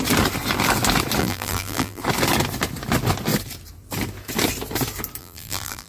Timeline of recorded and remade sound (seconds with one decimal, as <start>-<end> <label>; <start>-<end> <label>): 0.0-1.2 recorded; 1.2-2.0 remade; 2.0-5.2 recorded; 5.2-5.9 remade

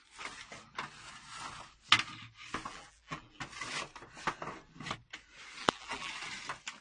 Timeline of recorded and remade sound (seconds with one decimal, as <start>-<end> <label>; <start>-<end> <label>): 0.0-2.7 recorded; 2.7-3.4 remade; 3.4-5.6 recorded; 5.6-6.1 remade; 6.1-6.8 recorded

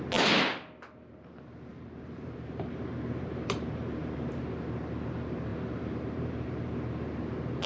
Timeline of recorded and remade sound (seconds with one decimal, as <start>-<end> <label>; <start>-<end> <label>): 0.0-1.7 recorded; 1.7-4.4 remade; 4.4-5.5 recorded; 5.5-6.7 remade; 6.7-7.7 recorded